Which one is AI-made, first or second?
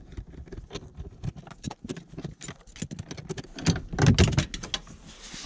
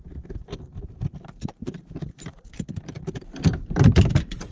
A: second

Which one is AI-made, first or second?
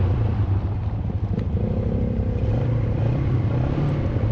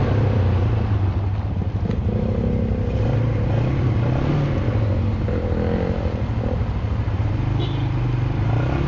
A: first